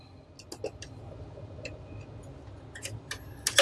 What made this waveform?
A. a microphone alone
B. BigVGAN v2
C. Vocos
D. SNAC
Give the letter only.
A